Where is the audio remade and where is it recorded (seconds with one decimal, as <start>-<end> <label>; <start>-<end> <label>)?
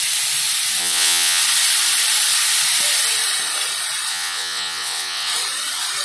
0.0-0.8 recorded; 0.8-1.4 remade; 1.4-4.1 recorded; 4.1-5.3 remade; 5.3-6.0 recorded